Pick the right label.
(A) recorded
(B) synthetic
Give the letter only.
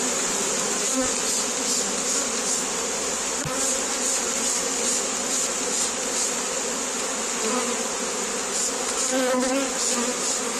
A